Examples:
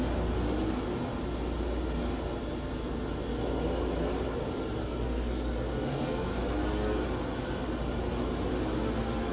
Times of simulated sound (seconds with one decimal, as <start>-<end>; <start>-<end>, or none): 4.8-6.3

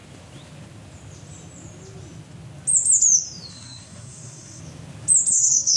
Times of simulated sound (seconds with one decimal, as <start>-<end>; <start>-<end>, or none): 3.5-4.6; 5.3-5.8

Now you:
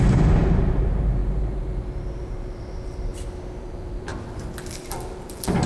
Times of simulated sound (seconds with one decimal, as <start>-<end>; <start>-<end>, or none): 0.0-3.1; 3.6-4.1; 4.7-5.7

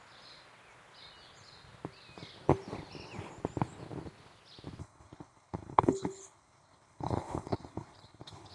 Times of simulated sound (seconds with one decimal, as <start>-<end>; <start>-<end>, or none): 4.8-8.5